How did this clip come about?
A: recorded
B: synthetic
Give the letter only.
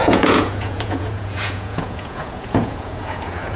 B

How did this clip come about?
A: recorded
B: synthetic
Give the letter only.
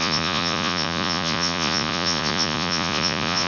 B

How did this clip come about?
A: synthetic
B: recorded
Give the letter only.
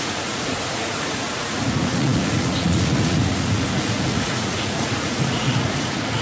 A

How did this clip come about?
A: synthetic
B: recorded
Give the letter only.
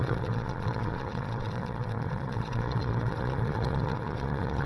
A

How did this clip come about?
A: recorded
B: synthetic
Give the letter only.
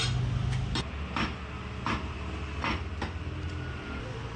A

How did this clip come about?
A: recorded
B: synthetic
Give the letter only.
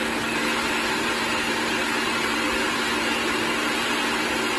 A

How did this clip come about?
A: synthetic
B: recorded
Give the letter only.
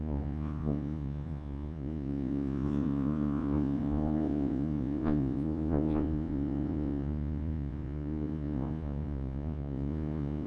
A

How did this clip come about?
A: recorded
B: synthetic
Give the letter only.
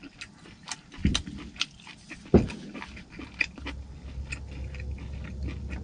A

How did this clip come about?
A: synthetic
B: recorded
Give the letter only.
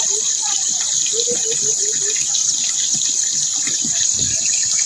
B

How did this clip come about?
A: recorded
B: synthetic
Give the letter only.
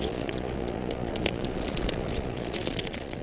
B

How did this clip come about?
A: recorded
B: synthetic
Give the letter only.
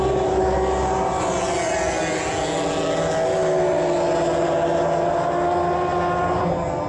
A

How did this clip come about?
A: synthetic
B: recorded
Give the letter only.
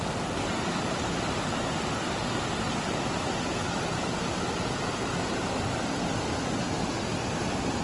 B